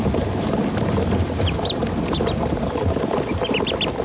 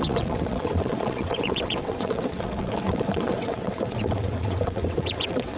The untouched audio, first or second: first